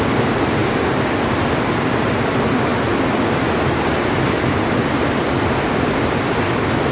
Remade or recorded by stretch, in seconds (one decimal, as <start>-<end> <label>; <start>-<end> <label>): 0.0-6.9 recorded